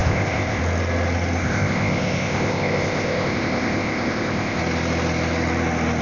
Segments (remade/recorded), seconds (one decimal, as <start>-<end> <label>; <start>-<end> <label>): 0.0-0.6 remade; 0.6-1.4 recorded; 1.4-4.6 remade; 4.6-6.0 recorded